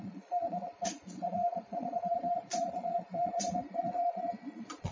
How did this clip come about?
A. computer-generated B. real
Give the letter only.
A